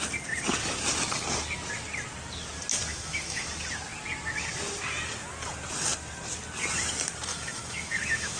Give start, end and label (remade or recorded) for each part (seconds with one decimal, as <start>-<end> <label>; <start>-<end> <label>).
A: 0.0-2.9 recorded; 2.9-3.5 remade; 3.5-7.3 recorded; 7.3-8.4 remade